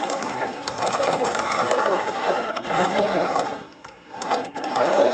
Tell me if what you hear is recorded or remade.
remade